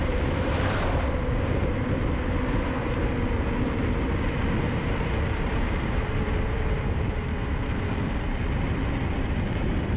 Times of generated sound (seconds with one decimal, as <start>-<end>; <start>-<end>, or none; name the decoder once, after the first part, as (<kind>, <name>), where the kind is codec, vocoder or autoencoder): 0.0-1.6 (vocoder, BigVGAN v2); 2.7-10.0